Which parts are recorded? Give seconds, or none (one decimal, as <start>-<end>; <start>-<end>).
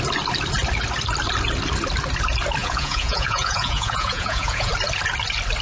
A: 0.0-2.6; 4.7-5.6